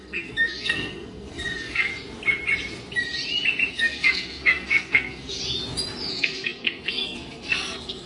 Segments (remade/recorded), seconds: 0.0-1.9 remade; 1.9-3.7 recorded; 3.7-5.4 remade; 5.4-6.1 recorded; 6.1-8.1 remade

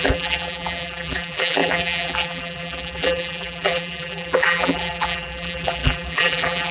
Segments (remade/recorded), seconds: 0.0-6.7 remade

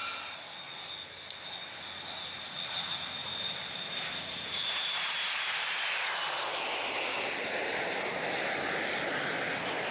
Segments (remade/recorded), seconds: 0.0-3.2 recorded; 3.2-5.8 remade; 5.8-6.5 recorded; 6.5-8.2 remade; 8.2-9.9 recorded

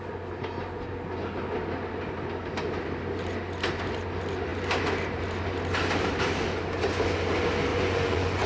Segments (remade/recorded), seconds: 0.0-7.7 recorded; 7.7-8.5 remade

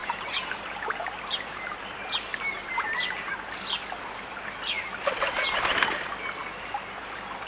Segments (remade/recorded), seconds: 0.0-3.3 remade; 3.3-7.5 recorded

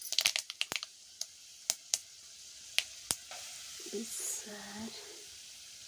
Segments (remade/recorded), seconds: 0.0-5.9 recorded